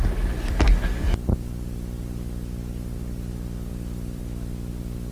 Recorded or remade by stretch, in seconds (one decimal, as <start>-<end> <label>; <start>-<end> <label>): 0.0-3.7 recorded; 3.7-4.2 remade; 4.2-5.1 recorded